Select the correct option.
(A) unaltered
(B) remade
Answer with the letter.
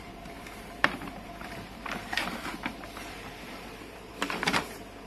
B